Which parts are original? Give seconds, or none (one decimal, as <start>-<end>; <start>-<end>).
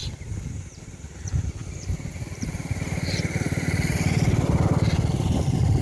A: 0.8-5.8